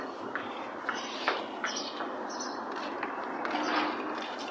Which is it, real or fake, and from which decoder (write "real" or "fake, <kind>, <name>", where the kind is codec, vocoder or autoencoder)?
real